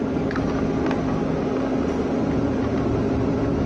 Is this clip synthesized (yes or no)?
no